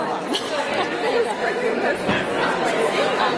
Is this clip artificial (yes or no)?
no